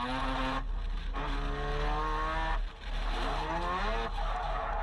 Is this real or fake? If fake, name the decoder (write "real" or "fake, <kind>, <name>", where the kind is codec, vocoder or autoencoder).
real